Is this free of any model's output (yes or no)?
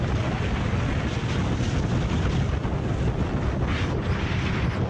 yes